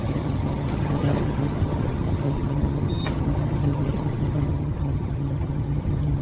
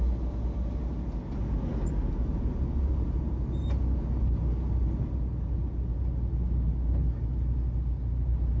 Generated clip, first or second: first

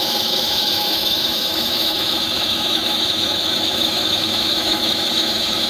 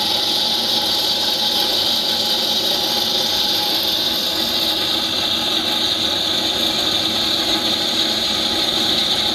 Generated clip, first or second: first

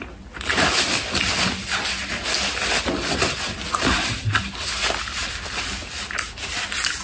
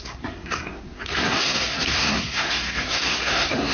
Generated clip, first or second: second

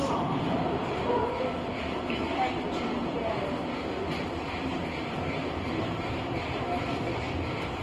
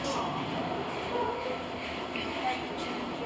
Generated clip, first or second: first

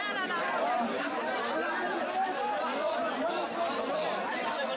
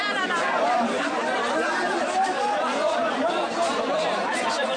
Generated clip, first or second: second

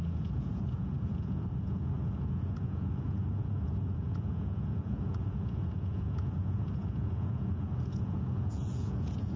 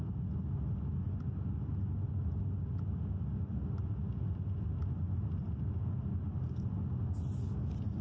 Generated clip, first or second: first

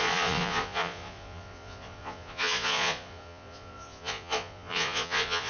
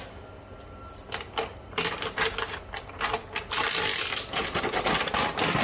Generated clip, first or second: first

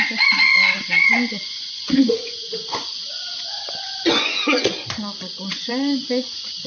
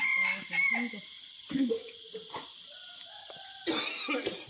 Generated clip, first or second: first